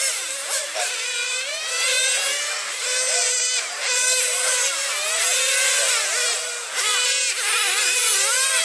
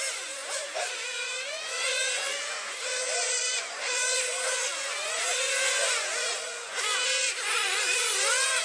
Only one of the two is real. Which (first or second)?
first